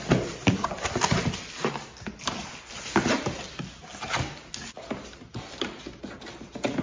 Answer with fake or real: real